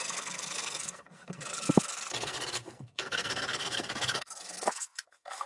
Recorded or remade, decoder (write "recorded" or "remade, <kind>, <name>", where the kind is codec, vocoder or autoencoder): remade, codec, SNAC